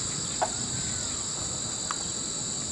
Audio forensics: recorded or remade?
recorded